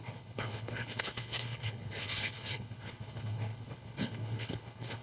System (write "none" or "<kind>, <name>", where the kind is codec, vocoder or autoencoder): codec, HILCodec